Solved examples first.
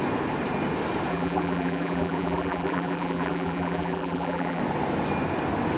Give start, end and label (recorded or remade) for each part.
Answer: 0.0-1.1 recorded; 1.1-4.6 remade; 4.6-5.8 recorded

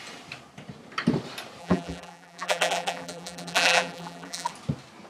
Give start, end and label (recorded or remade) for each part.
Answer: 0.0-1.6 recorded; 1.6-4.5 remade; 4.5-5.1 recorded

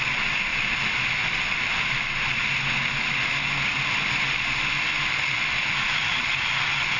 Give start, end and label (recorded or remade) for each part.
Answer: 0.0-0.5 recorded; 0.5-2.0 remade; 2.0-3.7 recorded; 3.7-6.3 remade; 6.3-7.0 recorded

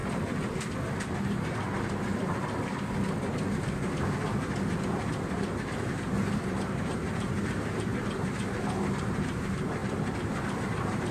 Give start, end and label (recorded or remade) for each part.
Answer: 0.0-4.8 recorded; 4.8-9.8 remade; 9.8-10.6 recorded; 10.6-11.1 remade

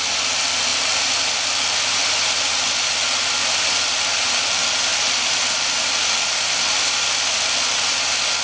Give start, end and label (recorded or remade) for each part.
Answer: 0.0-0.7 recorded; 0.7-3.3 remade; 3.3-4.9 recorded; 4.9-7.7 remade; 7.7-8.4 recorded